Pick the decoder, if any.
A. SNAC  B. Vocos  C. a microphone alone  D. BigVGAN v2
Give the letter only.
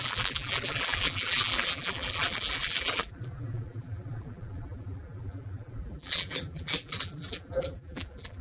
D